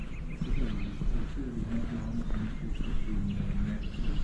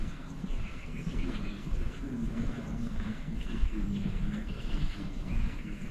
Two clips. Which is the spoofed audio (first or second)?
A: second